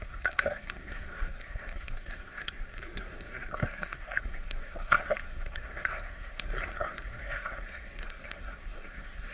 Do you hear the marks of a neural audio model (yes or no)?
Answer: yes